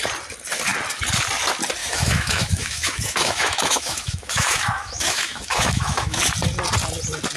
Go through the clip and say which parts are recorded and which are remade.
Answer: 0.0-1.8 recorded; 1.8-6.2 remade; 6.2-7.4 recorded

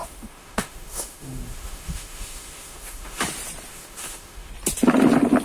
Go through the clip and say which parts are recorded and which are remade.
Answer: 0.0-3.2 remade; 3.2-3.7 recorded; 3.7-4.5 remade; 4.5-5.4 recorded

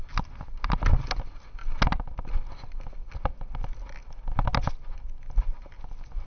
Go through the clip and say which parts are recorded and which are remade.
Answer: 0.0-6.3 recorded

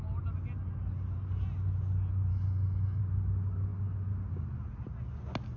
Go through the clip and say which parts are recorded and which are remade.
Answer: 0.0-2.3 recorded; 2.3-3.0 remade; 3.0-5.6 recorded

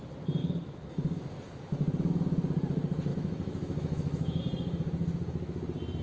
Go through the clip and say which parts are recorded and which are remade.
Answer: 0.0-0.4 recorded; 0.4-1.2 remade; 1.2-3.1 recorded; 3.1-4.4 remade; 4.4-6.0 recorded

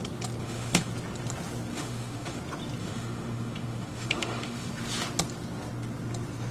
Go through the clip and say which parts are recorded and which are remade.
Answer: 0.0-0.4 recorded; 0.4-0.9 remade; 0.9-1.7 recorded; 1.7-2.4 remade; 2.4-2.8 recorded; 2.8-4.7 remade; 4.7-6.5 recorded